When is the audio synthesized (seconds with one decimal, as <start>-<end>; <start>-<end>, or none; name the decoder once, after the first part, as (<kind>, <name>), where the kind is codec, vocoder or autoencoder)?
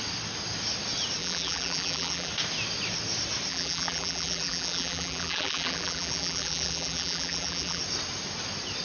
1.2-2.3 (vocoder, BigVGAN v2); 3.5-7.8